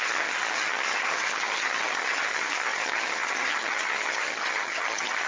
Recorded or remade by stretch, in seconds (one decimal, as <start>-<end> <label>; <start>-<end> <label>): 0.0-5.3 remade